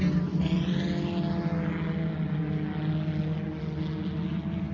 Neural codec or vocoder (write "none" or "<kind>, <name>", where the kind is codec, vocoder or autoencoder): none